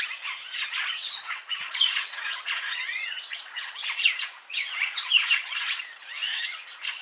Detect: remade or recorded remade